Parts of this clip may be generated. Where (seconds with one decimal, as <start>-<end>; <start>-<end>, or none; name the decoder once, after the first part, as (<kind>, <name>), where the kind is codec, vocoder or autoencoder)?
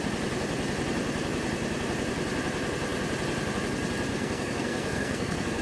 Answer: 4.1-5.6 (codec, SNAC)